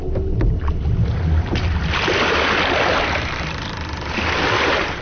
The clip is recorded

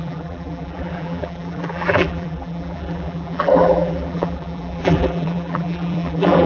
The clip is remade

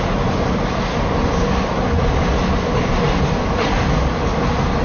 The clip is recorded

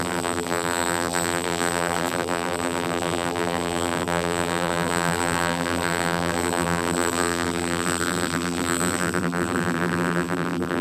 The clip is remade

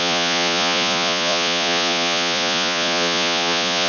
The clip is remade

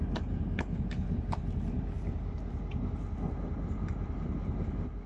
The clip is recorded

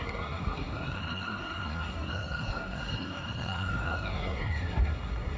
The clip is remade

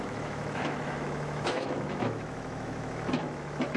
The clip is remade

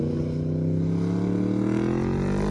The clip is recorded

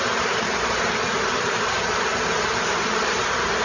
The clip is remade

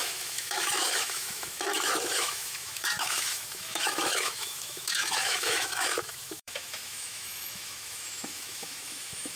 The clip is remade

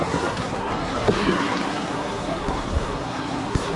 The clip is remade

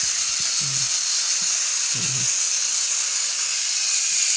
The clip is recorded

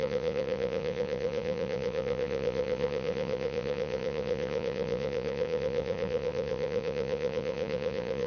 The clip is remade